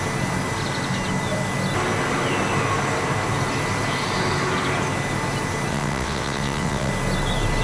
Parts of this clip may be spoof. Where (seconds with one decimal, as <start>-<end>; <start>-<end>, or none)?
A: 5.7-6.9